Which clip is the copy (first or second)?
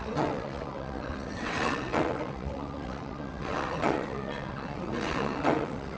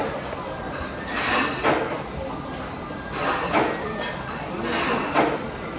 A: first